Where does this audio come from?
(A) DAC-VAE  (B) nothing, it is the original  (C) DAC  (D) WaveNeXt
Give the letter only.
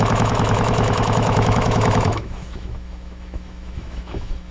A